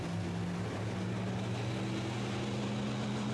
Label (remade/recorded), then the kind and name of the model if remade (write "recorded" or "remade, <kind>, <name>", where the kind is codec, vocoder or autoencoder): recorded